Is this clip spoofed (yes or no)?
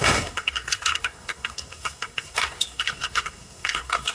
yes